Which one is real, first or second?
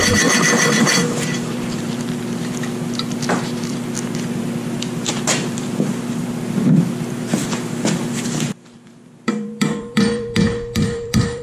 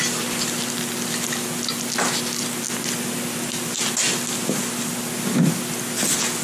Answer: second